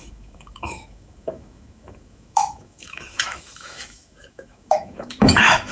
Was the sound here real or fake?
fake